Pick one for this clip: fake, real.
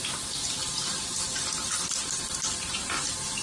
real